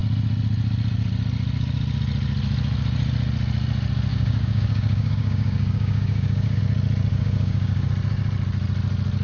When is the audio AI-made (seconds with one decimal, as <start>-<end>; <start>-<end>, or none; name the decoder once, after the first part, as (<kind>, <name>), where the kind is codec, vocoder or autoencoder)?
4.1-6.6 (codec, DAC); 7.1-7.9